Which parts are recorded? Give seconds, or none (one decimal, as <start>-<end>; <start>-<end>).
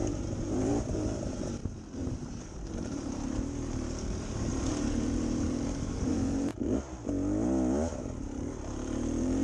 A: 6.5-8.0